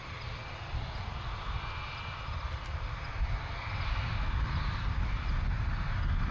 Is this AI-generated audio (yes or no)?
no